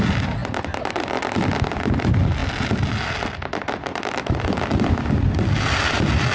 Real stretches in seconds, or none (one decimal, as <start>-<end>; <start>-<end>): 0.0-3.9